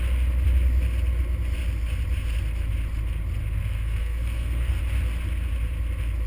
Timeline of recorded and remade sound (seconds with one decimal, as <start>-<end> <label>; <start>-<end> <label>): 0.0-3.6 recorded; 3.6-4.8 remade; 4.8-6.3 recorded

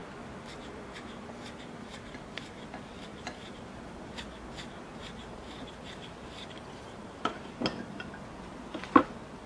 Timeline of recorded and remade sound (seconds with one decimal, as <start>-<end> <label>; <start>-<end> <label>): 0.0-3.1 recorded; 3.1-4.0 remade; 4.0-5.0 recorded; 5.0-7.2 remade; 7.2-9.5 recorded

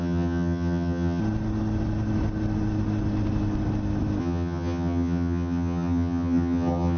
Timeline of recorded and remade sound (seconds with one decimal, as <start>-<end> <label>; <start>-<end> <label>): 0.0-1.2 remade; 1.2-4.2 recorded; 4.2-7.0 remade

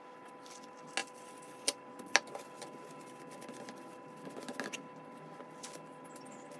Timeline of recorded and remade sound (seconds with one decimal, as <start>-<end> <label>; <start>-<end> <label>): 0.0-6.6 recorded